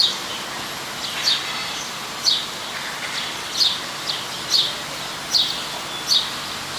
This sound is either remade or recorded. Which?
recorded